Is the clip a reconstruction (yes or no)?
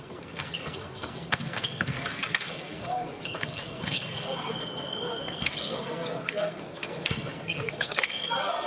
yes